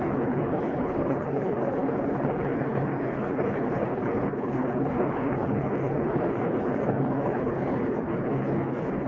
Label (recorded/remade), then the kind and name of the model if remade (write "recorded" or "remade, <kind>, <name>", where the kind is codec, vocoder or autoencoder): remade, codec, HILCodec